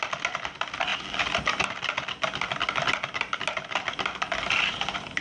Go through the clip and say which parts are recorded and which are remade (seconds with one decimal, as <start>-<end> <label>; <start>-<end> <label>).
0.0-5.2 recorded